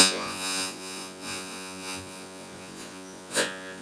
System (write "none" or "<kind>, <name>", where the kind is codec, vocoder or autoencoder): vocoder, Vocos